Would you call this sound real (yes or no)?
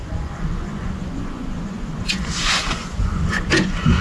no